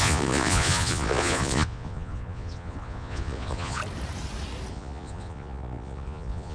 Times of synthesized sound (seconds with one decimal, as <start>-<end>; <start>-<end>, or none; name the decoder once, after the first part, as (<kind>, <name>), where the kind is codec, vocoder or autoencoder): 0.0-3.8 (vocoder, Vocos); 4.7-6.5